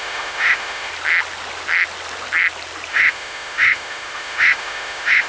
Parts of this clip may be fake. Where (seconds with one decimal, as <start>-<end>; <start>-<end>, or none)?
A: 0.0-0.9; 2.9-5.3